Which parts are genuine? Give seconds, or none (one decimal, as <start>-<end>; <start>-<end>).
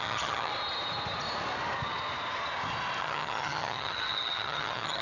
0.5-3.0